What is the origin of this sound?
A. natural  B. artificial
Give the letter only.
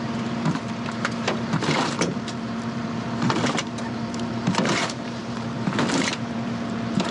B